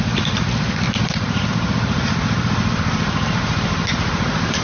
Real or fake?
fake